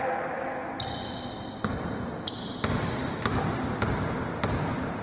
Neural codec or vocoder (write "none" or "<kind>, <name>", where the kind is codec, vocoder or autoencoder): none